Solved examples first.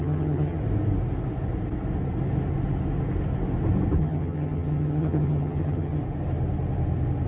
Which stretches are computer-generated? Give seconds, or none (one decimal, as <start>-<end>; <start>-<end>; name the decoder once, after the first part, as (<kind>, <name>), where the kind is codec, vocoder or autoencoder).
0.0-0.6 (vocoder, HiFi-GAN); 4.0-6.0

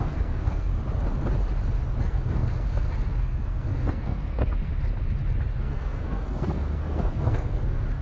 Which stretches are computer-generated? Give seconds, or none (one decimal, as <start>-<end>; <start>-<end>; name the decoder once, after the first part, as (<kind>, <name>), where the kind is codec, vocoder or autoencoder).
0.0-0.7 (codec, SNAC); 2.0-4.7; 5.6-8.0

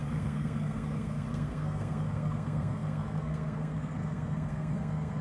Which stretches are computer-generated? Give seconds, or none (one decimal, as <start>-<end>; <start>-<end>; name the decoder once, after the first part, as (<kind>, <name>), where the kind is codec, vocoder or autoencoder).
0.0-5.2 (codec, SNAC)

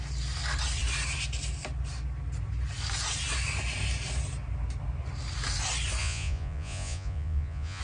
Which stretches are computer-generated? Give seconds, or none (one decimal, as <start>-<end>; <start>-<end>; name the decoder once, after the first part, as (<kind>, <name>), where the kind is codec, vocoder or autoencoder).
6.0-7.8 (vocoder, Vocos)